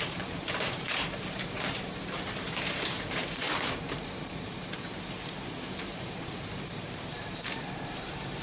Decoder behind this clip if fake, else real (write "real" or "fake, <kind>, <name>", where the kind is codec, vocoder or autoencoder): fake, vocoder, BigVGAN v2